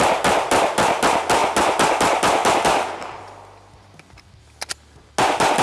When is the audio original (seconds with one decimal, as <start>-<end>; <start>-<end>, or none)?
0.0-5.6